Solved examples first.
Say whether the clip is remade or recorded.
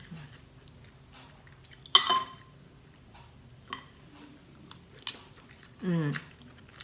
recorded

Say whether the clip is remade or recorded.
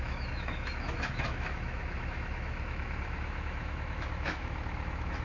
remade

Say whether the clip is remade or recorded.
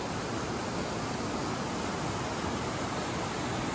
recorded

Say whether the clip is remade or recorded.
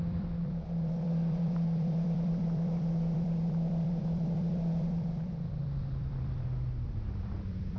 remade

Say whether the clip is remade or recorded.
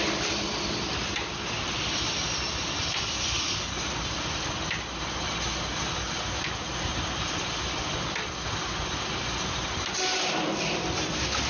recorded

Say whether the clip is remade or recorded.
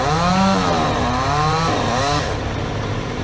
remade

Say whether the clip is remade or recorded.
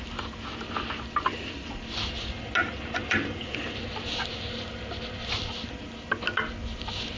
recorded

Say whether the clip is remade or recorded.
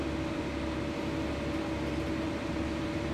recorded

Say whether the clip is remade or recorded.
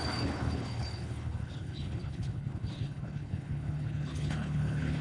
remade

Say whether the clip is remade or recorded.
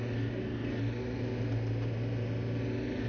recorded